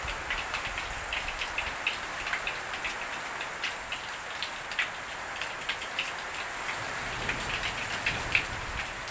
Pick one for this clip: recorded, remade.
recorded